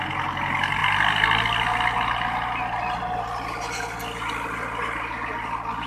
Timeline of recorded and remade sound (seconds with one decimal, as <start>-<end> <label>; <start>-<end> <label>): 0.0-5.9 recorded